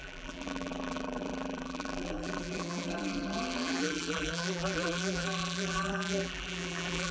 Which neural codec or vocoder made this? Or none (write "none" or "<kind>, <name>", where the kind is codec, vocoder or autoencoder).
vocoder, BigVGAN v2